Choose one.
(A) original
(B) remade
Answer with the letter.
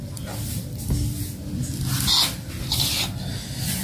A